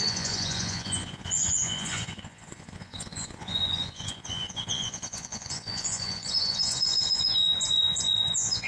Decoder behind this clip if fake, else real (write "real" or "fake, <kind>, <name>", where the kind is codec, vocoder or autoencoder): fake, vocoder, Vocos